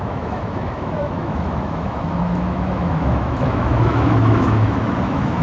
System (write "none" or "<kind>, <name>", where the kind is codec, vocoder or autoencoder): autoencoder, DAC-VAE